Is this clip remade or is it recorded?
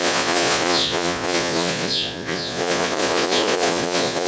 remade